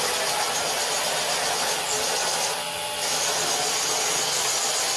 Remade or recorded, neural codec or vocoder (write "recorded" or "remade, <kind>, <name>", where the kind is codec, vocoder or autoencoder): recorded